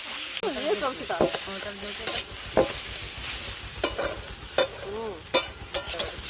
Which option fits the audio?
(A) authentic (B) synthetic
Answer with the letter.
A